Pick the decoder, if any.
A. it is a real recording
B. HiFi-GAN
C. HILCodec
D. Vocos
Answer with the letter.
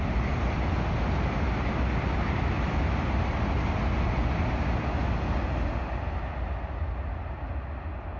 A